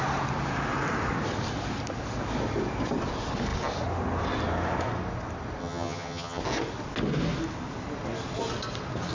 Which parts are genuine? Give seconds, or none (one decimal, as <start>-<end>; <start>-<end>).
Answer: 0.0-5.6; 6.4-9.1